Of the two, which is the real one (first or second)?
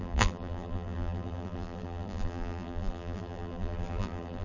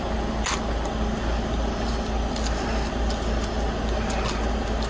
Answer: second